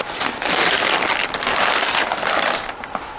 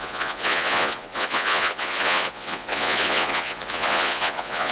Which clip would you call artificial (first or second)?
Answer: second